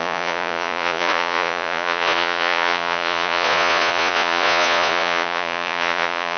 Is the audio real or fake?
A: fake